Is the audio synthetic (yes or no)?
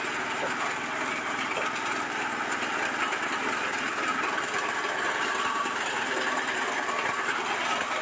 no